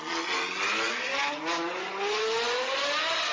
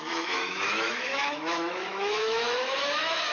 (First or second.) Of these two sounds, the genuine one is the first